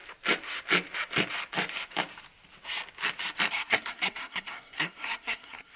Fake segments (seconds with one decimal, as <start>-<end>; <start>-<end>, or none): 3.5-5.8